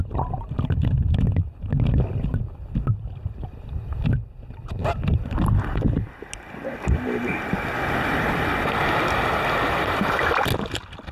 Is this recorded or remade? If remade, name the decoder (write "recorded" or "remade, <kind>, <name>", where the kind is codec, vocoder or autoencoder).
recorded